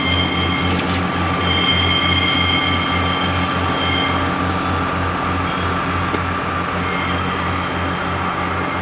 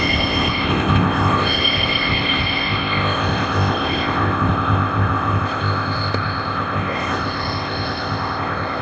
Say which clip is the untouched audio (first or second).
first